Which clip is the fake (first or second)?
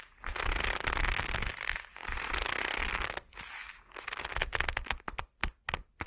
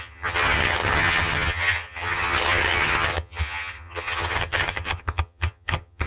second